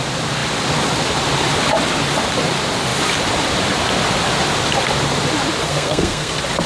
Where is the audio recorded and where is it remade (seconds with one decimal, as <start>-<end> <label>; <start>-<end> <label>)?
0.0-5.6 recorded; 5.6-6.3 remade; 6.3-6.7 recorded